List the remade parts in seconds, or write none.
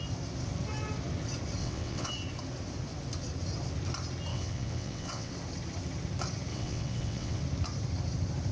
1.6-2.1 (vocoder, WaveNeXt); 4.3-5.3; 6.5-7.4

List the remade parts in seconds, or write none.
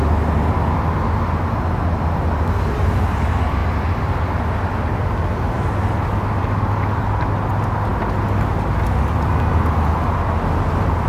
none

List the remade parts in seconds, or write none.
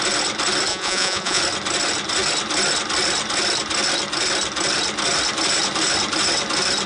0.7-1.4 (vocoder, Vocos)